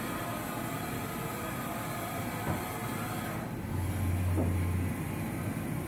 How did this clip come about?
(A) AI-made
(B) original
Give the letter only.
B